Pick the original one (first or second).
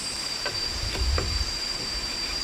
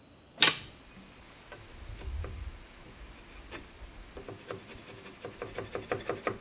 second